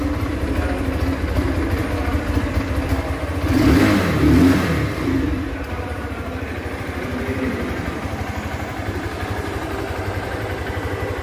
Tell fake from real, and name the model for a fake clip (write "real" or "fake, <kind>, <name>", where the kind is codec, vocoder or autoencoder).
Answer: fake, vocoder, BigVGAN v2